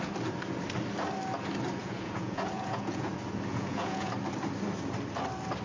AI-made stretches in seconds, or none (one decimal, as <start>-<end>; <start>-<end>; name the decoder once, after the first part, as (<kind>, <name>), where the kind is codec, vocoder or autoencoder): 1.8-3.1 (vocoder, Vocos); 3.5-4.1